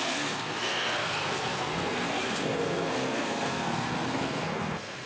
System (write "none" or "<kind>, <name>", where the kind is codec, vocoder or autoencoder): codec, SNAC